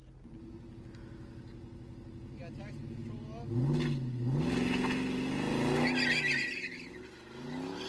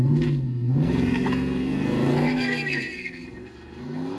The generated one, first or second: second